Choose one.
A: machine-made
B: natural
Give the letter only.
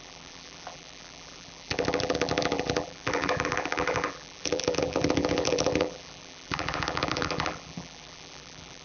A